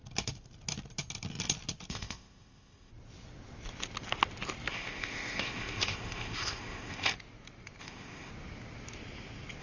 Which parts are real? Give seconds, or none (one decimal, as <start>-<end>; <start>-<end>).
0.0-1.9; 2.9-4.7; 7.1-7.8; 8.3-9.6